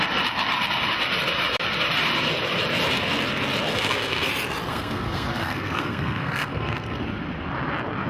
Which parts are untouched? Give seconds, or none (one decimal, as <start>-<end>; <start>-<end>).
0.0-3.7; 4.3-4.7; 7.0-8.1